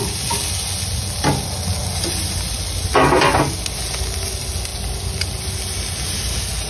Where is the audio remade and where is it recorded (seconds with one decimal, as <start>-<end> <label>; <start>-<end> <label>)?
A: 0.0-6.7 recorded